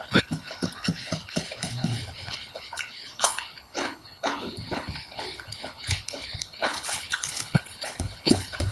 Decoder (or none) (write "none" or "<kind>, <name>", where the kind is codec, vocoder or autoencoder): codec, HILCodec